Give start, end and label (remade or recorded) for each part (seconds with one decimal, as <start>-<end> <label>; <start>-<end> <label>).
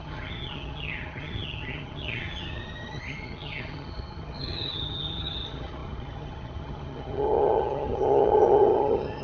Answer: 0.0-9.2 remade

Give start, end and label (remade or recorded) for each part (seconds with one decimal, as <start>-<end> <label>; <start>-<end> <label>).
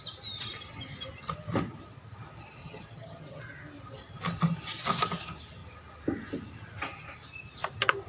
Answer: 0.0-2.6 recorded; 2.6-3.4 remade; 3.4-8.1 recorded